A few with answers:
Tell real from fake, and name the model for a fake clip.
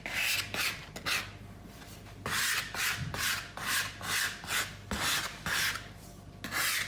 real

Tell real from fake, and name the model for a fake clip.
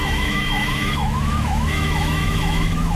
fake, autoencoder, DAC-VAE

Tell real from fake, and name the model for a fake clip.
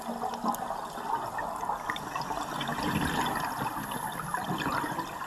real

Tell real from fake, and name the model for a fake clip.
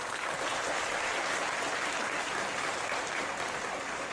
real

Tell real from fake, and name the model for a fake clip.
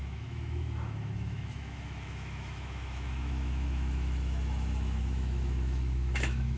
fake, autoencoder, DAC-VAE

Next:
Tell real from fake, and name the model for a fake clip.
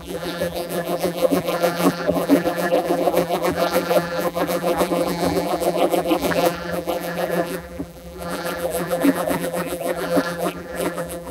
fake, vocoder, BigVGAN v2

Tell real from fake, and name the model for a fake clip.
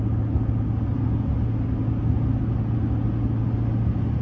real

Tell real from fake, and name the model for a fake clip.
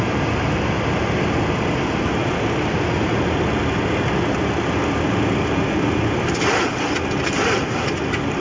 real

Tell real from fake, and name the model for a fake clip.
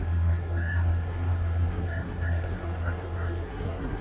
fake, codec, SNAC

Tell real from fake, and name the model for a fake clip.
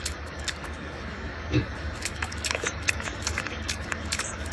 fake, codec, DAC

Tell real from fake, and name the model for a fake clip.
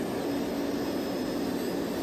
real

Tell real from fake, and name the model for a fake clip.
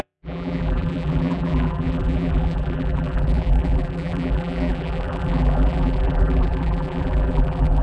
fake, vocoder, BigVGAN v2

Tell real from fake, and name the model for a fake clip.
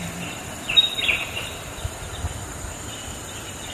real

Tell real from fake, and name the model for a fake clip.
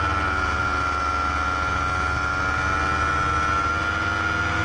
real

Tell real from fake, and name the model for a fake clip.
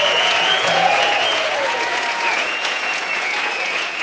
fake, vocoder, Vocos